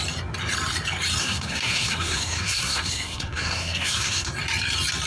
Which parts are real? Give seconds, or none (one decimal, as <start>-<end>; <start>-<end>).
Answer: 0.0-1.2; 4.3-5.1